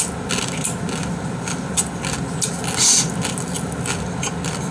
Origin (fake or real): real